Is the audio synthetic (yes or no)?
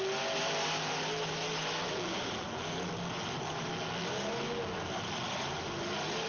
no